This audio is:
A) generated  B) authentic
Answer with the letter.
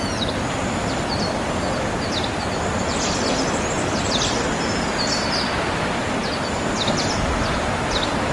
A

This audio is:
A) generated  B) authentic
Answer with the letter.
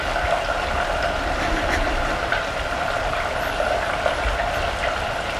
B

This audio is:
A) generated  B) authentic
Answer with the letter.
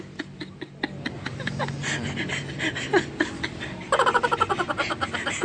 B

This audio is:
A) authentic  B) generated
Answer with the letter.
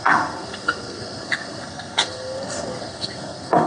B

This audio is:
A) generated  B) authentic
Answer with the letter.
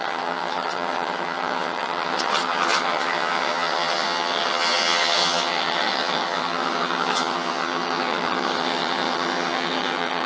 A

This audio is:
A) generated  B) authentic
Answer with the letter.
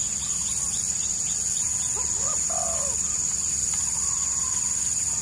B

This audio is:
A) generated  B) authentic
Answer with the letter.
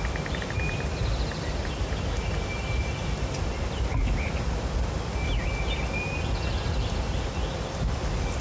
B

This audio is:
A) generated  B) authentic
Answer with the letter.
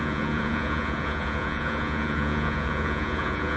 A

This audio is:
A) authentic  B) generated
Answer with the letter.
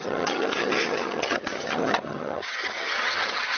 B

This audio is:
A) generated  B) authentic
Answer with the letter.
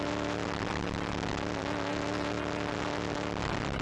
B